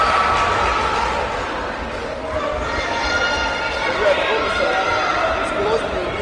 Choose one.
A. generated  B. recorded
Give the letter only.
B